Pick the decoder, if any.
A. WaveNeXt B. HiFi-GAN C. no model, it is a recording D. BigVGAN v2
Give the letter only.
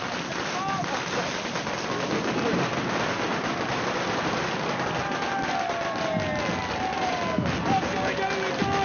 C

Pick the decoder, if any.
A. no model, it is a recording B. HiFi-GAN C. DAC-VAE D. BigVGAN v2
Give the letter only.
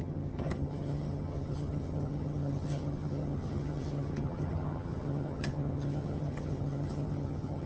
B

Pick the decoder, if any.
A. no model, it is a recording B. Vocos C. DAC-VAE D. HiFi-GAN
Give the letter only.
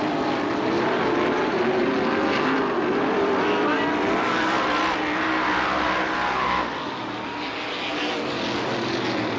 A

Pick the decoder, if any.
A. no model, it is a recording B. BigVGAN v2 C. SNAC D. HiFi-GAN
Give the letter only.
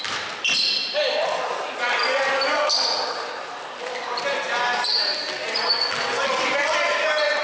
A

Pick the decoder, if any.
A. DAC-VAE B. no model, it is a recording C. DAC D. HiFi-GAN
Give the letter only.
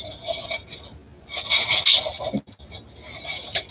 B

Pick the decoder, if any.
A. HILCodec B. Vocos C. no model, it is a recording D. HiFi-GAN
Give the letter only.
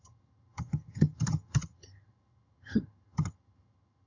D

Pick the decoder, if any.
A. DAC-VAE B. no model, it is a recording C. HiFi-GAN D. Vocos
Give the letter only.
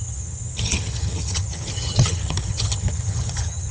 C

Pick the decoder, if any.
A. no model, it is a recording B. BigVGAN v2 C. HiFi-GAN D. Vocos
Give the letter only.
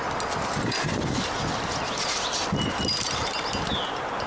A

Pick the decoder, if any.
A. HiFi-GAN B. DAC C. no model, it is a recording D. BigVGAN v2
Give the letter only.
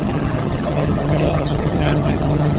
A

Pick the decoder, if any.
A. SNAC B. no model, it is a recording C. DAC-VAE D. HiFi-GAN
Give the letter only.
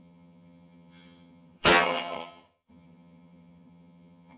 D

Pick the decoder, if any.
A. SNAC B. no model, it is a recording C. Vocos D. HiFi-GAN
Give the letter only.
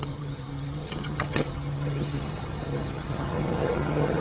D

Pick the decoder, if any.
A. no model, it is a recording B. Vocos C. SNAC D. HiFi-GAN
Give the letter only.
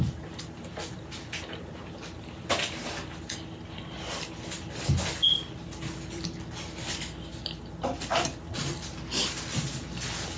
A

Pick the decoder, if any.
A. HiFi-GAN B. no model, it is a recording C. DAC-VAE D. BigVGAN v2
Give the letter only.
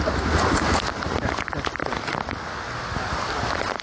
B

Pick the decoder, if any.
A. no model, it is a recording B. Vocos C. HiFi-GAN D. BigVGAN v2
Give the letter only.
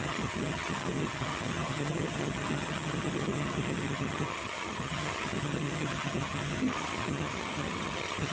C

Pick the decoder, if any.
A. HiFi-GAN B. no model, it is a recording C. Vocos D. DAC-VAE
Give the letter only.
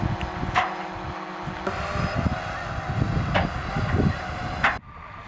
B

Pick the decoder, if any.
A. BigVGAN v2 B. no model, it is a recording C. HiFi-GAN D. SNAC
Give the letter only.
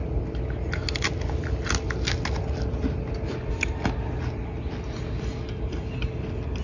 B